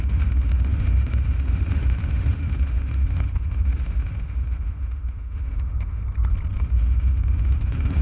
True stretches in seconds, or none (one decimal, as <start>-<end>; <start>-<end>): 6.0-6.6